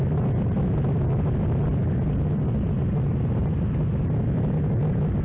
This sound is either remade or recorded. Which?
recorded